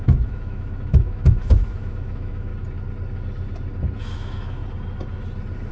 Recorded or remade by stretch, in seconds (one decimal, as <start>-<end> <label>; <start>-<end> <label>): 0.0-2.5 remade; 2.5-4.0 recorded; 4.0-4.6 remade; 4.6-5.7 recorded